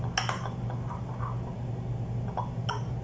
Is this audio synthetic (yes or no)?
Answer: no